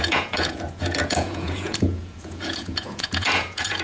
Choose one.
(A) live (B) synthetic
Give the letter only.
B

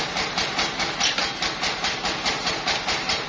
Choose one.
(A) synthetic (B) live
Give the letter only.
B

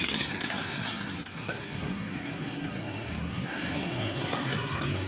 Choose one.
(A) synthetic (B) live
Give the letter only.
A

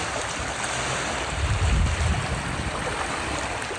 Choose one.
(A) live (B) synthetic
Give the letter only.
A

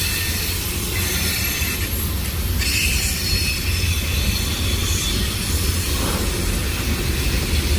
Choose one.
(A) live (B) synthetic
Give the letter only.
A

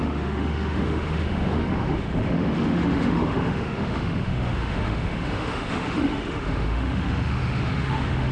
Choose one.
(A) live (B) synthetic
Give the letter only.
B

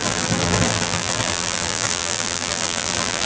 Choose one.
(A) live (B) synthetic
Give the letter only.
B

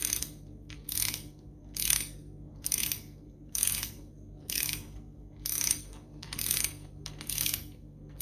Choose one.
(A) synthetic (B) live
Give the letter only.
A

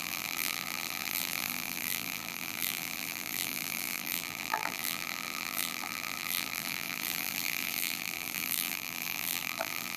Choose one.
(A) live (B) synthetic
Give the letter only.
B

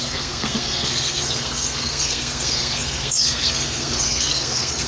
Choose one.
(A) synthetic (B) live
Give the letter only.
A